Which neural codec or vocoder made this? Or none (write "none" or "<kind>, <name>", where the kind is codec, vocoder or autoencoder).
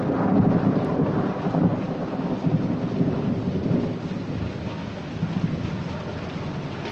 none